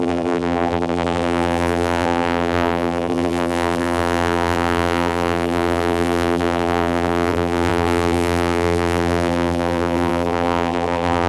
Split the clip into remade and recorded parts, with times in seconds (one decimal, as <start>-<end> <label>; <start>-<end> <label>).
0.0-11.3 remade